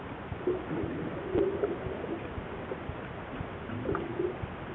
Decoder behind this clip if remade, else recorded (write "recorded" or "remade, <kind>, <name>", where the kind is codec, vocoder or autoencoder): recorded